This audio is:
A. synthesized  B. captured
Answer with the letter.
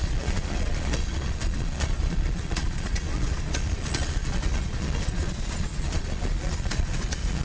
A